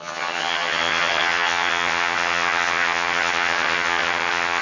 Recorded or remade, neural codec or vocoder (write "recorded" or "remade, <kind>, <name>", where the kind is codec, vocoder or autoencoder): remade, vocoder, HiFi-GAN